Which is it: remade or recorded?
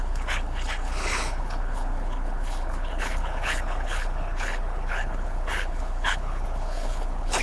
remade